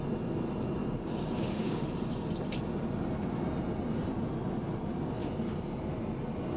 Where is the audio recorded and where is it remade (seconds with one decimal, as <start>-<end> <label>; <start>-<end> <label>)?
0.0-0.8 recorded; 0.8-1.8 remade; 1.8-6.6 recorded